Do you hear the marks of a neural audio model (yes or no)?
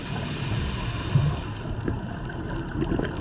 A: no